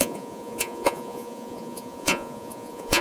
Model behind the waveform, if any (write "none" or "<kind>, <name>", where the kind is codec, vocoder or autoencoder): vocoder, Vocos